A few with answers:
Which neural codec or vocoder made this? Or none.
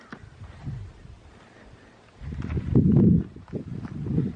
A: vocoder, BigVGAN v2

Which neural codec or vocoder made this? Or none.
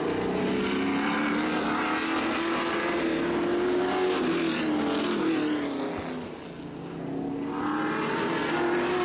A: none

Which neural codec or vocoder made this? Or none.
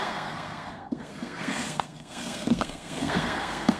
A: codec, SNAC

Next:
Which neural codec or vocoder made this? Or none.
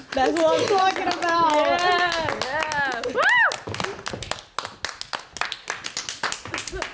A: none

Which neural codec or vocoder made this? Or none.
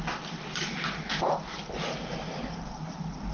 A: none